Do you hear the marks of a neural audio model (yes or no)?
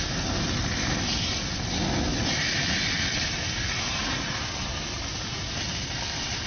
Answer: no